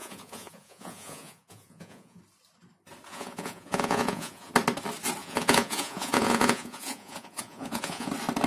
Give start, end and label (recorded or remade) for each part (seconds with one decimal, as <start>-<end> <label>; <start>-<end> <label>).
0.0-2.2 remade; 2.2-3.1 recorded; 3.1-4.5 remade; 4.5-5.2 recorded; 5.2-8.1 remade; 8.1-8.5 recorded